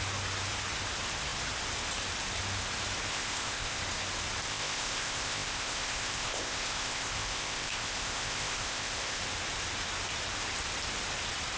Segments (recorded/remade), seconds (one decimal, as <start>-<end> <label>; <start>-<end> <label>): 0.0-3.1 recorded; 3.1-3.8 remade; 3.8-4.5 recorded; 4.5-9.2 remade; 9.2-11.6 recorded